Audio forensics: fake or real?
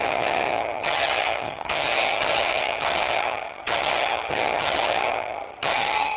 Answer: fake